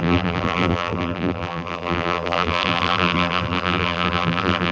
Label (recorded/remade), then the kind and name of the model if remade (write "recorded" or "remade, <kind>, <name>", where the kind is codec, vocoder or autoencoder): remade, vocoder, BigVGAN v2